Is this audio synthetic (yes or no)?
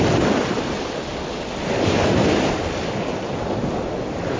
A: no